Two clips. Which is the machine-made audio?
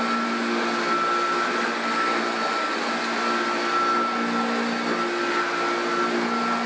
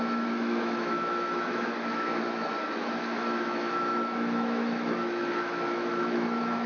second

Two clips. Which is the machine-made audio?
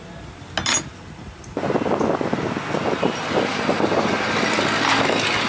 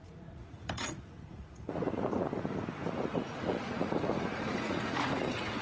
second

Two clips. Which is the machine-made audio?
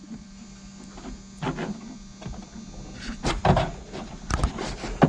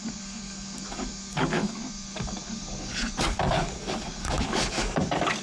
second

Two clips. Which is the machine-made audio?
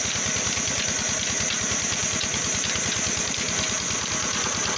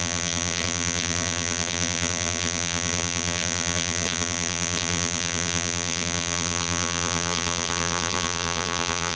second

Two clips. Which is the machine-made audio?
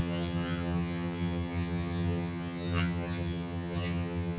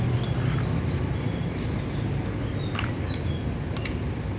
first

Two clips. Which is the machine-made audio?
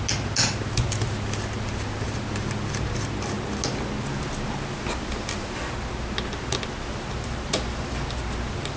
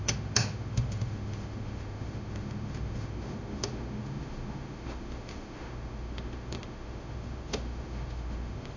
second